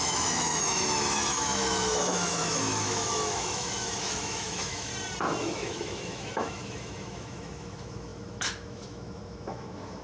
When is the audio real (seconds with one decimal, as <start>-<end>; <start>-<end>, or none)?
4.9-5.4